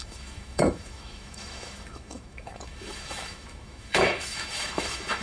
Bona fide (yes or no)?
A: no